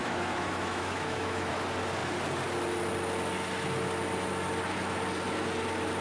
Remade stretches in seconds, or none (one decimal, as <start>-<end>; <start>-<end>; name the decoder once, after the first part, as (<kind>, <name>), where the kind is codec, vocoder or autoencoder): 0.0-1.5 (autoencoder, DAC-VAE)